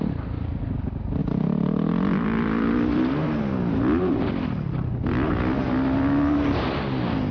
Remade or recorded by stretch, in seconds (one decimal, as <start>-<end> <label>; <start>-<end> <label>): 0.0-1.2 recorded; 1.2-3.0 remade; 3.0-7.3 recorded